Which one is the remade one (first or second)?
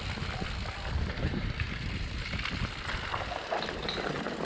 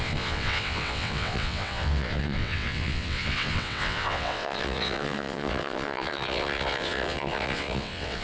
second